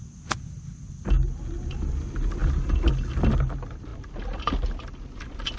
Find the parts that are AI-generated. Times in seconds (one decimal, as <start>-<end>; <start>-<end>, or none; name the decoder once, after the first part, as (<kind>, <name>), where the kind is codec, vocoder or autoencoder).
none